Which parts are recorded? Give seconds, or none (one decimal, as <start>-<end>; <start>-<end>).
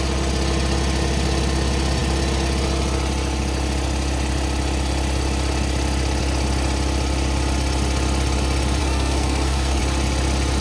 0.0-8.8; 9.8-10.6